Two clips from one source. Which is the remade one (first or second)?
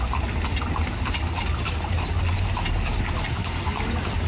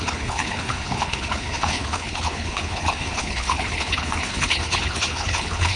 second